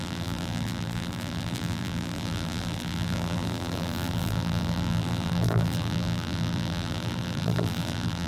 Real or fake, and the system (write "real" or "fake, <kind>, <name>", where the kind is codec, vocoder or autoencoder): fake, vocoder, BigVGAN v2